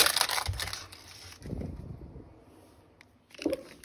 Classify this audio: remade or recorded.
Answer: recorded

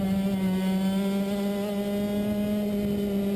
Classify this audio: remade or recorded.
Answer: recorded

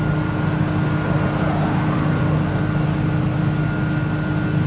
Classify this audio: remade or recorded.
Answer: recorded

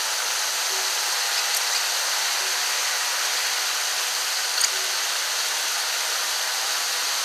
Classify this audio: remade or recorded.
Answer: recorded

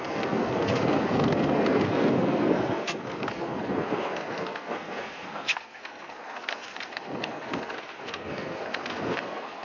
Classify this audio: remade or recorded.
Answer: remade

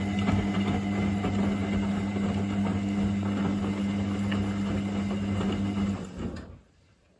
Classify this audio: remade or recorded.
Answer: recorded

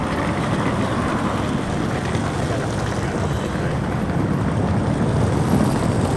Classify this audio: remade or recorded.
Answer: recorded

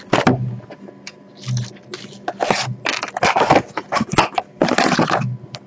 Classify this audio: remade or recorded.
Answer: recorded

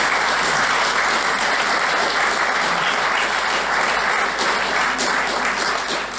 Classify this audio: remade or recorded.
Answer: recorded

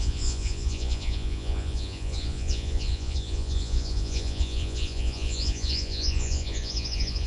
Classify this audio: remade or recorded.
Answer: remade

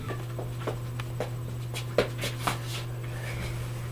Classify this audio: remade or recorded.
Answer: recorded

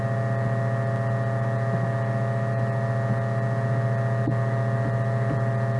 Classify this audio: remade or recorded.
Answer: recorded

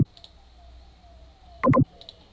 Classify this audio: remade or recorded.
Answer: recorded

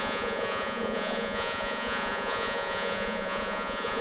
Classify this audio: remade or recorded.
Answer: remade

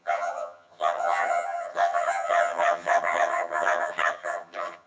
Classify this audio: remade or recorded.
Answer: remade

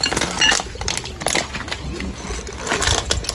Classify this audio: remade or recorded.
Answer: recorded